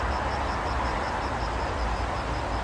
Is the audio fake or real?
real